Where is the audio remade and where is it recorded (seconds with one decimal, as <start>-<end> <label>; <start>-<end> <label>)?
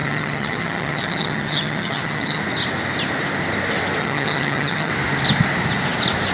0.0-2.4 remade; 2.4-4.0 recorded; 4.0-4.9 remade; 4.9-6.3 recorded